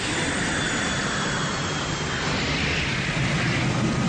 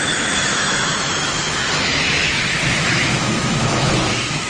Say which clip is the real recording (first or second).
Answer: first